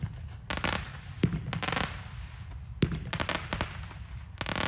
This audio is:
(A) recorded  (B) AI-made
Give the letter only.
A